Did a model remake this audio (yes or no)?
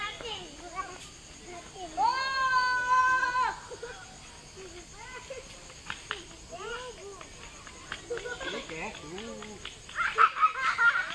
no